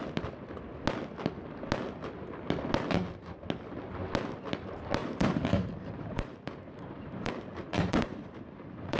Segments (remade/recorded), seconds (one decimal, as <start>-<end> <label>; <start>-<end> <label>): 0.0-5.0 recorded; 5.0-7.3 remade; 7.3-7.7 recorded; 7.7-9.0 remade